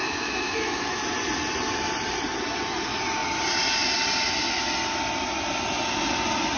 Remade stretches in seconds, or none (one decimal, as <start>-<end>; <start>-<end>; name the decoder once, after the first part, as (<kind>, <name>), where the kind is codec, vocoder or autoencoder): 0.0-1.0 (autoencoder, DAC-VAE)